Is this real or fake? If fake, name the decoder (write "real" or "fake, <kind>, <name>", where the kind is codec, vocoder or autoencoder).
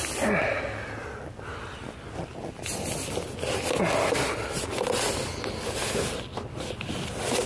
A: real